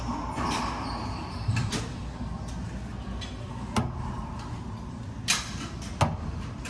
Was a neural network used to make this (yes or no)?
no